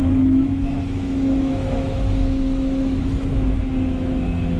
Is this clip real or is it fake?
fake